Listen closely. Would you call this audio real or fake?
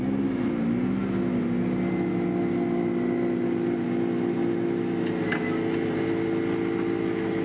real